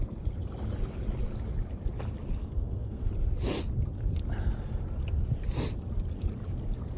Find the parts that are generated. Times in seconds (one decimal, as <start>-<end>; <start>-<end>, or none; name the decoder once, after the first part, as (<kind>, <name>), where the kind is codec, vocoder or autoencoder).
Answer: 2.4-3.1 (codec, SNAC)